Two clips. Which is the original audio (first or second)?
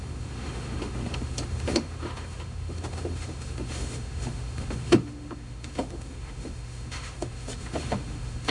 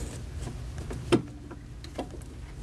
second